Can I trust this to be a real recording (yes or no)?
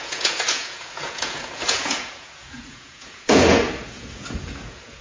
no